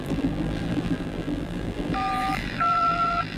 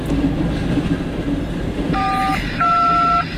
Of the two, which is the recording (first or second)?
second